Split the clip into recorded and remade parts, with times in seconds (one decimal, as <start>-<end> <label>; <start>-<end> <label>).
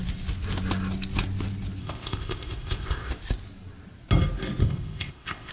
0.0-1.8 recorded; 1.8-3.1 remade; 3.1-4.6 recorded; 4.6-5.5 remade